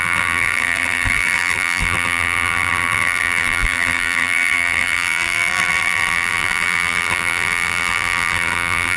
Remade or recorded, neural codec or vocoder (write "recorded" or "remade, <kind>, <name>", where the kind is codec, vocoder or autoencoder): remade, vocoder, BigVGAN v2